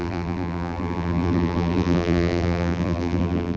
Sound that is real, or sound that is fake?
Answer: fake